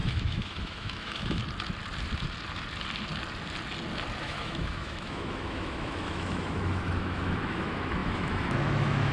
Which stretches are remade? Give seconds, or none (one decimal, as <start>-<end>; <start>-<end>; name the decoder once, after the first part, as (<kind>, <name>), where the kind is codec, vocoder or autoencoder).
0.0-1.4 (autoencoder, DAC-VAE); 4.2-9.1